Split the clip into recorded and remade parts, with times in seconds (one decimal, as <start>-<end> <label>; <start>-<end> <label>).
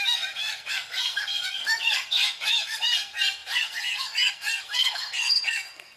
0.0-6.0 remade